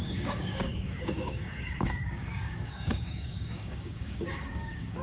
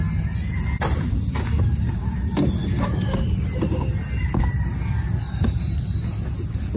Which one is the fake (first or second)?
first